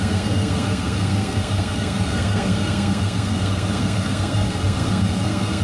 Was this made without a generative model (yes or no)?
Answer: no